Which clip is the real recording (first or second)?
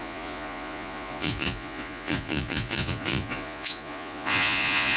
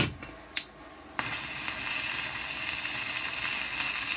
second